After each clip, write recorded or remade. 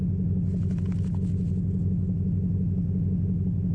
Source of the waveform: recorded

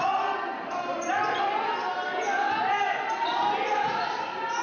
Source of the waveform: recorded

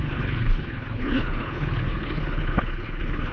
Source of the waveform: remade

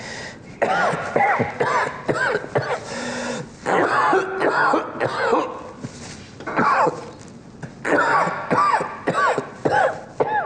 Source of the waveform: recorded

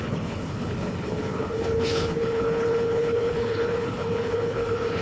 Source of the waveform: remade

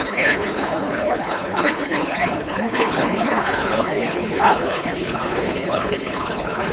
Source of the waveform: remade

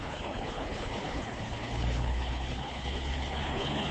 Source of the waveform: remade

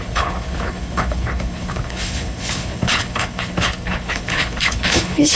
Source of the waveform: remade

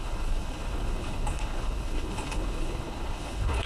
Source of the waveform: remade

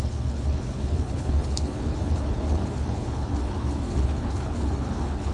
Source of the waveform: remade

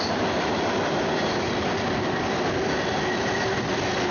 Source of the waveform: recorded